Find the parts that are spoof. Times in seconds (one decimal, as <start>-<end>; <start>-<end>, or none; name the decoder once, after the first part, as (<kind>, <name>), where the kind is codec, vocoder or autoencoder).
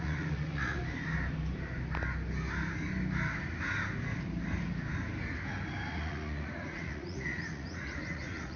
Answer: 0.0-0.8 (vocoder, Vocos); 5.9-8.6